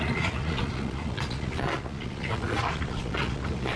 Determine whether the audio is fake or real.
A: fake